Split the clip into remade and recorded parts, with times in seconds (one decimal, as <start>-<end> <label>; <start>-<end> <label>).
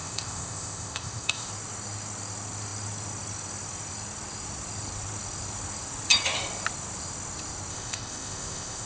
0.0-1.5 remade; 1.5-7.7 recorded; 7.7-8.9 remade